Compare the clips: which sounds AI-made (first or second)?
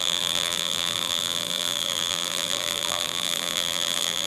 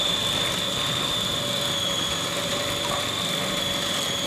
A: first